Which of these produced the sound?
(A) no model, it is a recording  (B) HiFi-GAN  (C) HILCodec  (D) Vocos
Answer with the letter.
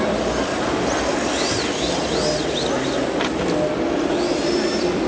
A